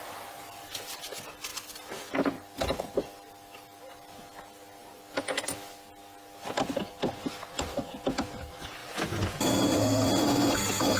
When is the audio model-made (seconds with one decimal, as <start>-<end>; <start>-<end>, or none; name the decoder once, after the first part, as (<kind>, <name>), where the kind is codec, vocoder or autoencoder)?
1.5-3.8 (vocoder, BigVGAN v2); 8.8-9.4